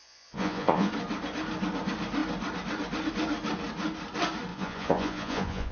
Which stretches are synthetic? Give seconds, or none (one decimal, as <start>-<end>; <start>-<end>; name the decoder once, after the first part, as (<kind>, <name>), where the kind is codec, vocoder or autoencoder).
0.0-0.9 (vocoder, Vocos); 4.5-5.7